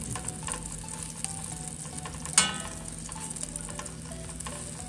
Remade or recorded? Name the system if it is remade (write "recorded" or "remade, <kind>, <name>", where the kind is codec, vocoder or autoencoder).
recorded